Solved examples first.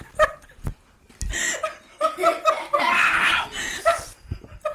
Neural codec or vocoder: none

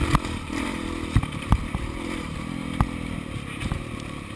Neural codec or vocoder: vocoder, BigVGAN v2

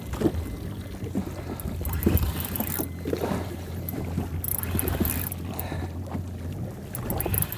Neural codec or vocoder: none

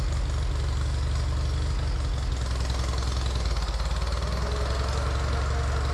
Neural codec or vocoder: none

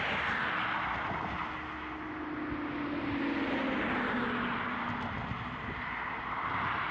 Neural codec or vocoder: none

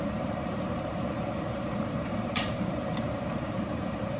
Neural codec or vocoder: vocoder, BigVGAN v2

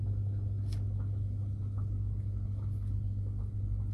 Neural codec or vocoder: none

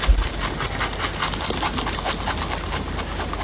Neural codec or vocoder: none